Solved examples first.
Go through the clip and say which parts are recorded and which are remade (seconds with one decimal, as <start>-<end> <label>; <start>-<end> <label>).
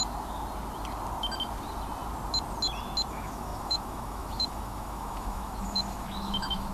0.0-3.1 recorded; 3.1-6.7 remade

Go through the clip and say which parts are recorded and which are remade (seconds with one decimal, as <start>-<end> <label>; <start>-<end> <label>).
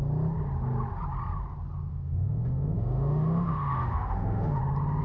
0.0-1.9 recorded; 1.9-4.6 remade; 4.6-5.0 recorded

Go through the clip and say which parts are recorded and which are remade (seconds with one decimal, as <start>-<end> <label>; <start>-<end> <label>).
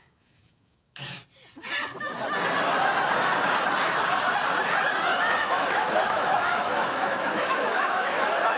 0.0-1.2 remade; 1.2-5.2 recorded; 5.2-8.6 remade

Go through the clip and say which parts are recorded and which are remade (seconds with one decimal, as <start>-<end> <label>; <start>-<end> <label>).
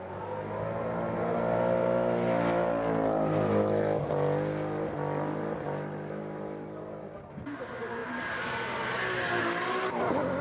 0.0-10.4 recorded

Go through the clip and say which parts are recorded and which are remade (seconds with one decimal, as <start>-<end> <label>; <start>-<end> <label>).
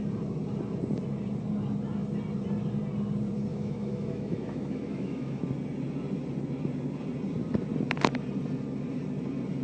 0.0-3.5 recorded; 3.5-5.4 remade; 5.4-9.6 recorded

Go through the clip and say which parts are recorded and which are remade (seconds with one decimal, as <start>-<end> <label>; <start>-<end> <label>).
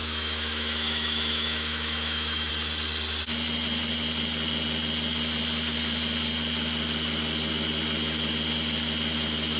0.0-2.5 remade; 2.5-9.6 recorded